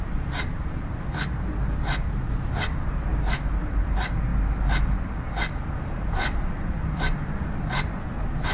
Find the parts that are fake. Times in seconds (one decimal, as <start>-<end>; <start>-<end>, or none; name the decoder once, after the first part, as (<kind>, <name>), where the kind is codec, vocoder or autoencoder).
0.0-3.1 (vocoder, BigVGAN v2); 3.6-4.3; 5.0-8.5